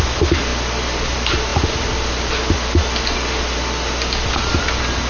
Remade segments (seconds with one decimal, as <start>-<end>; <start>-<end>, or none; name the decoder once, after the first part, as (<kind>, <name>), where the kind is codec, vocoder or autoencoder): none